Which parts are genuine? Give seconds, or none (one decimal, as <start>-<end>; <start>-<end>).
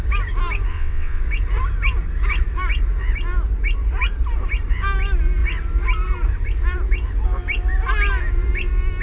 0.0-0.7; 1.2-9.0